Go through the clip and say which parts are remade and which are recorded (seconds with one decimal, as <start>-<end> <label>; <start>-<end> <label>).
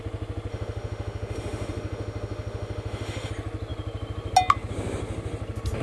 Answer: 0.0-0.5 recorded; 0.5-3.3 remade; 3.3-5.8 recorded